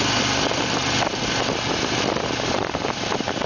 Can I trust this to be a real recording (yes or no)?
no